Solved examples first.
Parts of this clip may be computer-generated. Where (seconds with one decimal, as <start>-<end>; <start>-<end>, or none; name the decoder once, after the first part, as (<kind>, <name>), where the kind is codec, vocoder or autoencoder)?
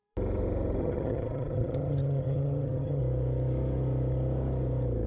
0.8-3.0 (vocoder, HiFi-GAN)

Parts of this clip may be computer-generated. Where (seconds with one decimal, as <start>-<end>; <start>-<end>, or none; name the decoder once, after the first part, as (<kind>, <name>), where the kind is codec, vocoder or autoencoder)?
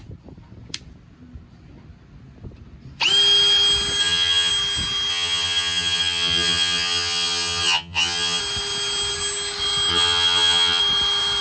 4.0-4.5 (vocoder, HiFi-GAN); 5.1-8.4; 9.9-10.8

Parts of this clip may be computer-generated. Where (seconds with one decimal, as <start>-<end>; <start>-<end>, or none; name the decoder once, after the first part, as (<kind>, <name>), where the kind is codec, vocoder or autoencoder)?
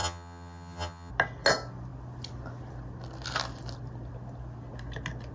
0.0-1.1 (vocoder, HiFi-GAN)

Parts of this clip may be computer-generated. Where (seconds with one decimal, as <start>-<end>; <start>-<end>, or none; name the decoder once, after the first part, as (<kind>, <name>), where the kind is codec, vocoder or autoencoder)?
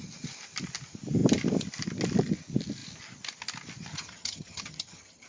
3.9-5.3 (vocoder, HiFi-GAN)